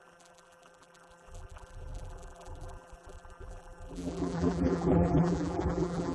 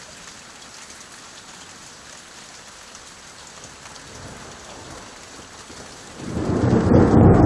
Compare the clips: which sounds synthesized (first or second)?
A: first